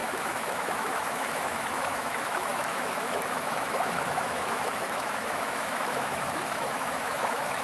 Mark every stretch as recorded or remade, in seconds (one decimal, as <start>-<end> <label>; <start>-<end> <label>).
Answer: 0.0-7.6 remade